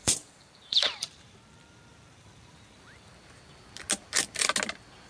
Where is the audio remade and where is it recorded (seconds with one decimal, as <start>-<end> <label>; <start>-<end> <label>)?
0.0-3.1 remade; 3.1-5.1 recorded

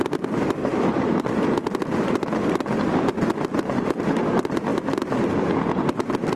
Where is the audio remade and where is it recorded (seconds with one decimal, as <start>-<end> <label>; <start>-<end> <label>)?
0.0-0.6 recorded; 0.6-1.2 remade; 1.2-3.3 recorded; 3.3-4.2 remade; 4.2-6.4 recorded